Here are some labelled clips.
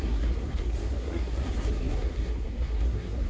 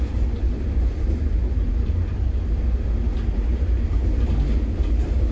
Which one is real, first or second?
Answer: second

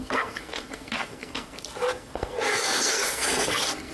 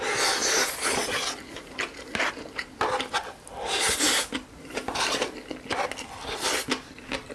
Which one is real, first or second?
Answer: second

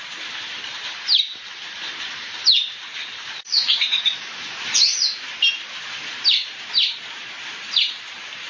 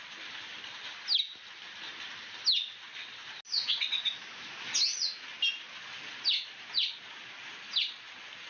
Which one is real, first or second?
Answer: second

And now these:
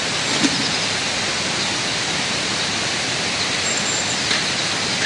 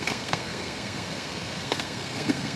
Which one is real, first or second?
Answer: first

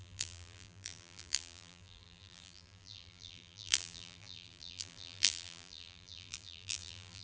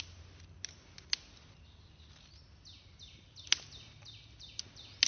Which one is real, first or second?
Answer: second